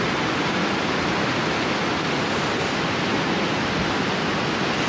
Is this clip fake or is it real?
real